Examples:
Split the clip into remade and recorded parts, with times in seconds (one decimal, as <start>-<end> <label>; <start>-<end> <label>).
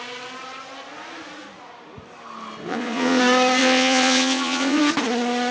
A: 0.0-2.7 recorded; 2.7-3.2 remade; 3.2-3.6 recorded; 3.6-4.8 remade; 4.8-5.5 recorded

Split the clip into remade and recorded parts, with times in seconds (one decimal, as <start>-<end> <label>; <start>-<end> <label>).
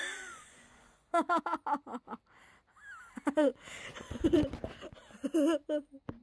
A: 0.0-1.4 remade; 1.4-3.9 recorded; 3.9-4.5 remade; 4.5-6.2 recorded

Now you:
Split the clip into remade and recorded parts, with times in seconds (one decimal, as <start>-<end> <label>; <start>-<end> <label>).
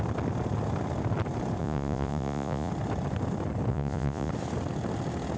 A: 0.0-1.6 recorded; 1.6-2.7 remade; 2.7-3.7 recorded; 3.7-4.3 remade; 4.3-5.4 recorded